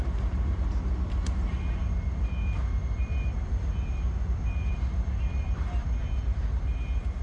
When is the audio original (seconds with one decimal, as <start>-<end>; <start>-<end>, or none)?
none